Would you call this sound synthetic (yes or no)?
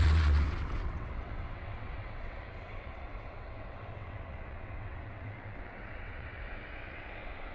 yes